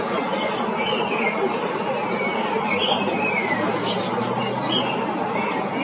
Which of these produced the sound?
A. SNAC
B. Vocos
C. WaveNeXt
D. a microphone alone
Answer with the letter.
D